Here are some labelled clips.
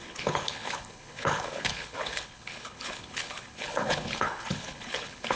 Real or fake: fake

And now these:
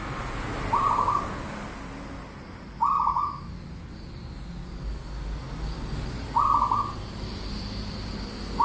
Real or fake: real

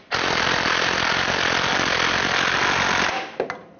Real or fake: real